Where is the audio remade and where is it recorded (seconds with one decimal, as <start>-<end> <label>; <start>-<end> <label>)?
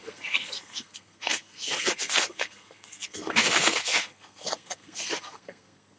0.0-6.0 remade